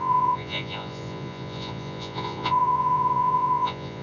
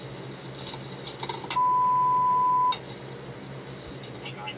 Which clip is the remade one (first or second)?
first